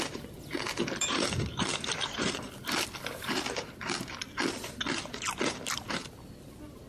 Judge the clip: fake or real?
fake